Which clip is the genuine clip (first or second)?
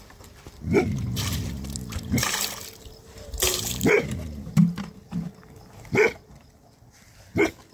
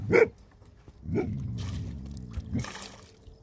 second